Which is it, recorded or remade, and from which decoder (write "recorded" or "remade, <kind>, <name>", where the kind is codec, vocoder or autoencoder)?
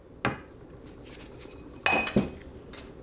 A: recorded